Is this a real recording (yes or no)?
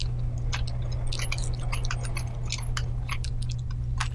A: yes